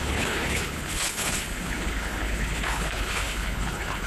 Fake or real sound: fake